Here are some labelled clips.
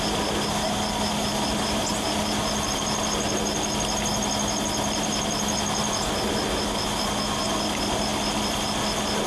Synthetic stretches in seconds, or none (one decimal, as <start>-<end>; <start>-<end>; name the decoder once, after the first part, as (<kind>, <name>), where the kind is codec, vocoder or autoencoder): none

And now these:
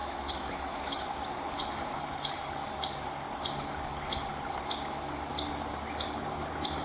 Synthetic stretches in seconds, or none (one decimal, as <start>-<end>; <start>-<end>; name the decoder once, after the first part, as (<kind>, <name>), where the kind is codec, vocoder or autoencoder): 0.0-1.1 (autoencoder, DAC-VAE)

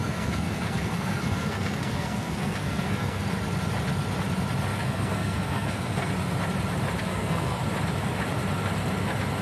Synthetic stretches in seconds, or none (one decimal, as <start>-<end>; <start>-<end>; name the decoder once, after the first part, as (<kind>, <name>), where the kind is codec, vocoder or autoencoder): 0.0-3.2 (codec, SNAC); 4.7-6.1; 7.0-7.6

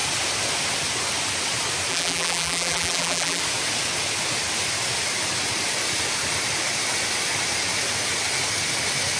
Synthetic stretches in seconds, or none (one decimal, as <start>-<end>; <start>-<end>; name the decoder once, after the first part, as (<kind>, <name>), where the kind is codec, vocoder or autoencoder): 1.9-3.4 (vocoder, BigVGAN v2)

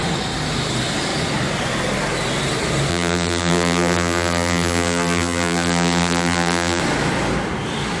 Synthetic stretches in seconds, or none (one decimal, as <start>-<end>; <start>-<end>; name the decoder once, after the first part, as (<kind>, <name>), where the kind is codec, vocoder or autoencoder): 2.9-6.8 (vocoder, BigVGAN v2)

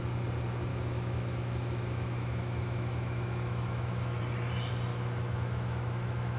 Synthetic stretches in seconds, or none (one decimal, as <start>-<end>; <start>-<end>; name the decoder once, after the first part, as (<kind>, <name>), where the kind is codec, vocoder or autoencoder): 0.7-4.2 (autoencoder, DAC-VAE); 4.9-6.4